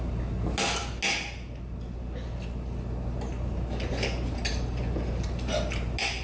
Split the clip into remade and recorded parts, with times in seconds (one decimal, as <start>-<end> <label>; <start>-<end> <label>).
0.0-6.2 recorded